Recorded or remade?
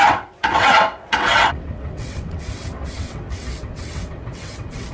remade